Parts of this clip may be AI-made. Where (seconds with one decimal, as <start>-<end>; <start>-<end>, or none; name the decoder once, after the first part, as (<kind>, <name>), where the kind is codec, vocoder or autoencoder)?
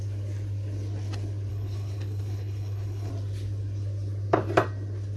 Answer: 1.5-3.1 (codec, HILCodec)